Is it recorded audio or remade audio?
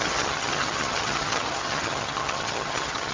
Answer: remade